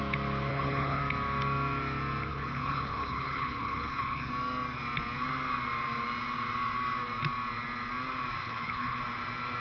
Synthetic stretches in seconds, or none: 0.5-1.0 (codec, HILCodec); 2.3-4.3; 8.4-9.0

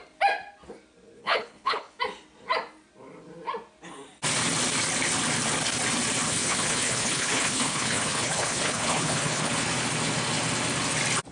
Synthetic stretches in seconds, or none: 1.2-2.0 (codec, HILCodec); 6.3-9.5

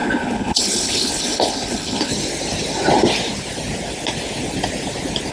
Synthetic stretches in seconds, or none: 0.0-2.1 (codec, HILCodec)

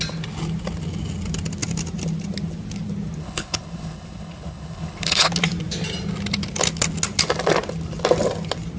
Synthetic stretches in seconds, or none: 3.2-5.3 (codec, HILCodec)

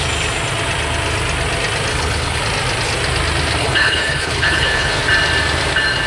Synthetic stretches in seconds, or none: 1.9-2.4 (codec, HILCodec); 3.6-5.0